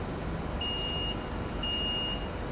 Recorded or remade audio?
recorded